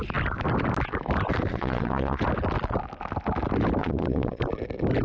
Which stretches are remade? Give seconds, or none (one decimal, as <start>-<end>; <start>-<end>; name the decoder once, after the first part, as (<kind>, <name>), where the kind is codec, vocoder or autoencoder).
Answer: 1.5-2.2 (vocoder, Vocos); 3.8-4.4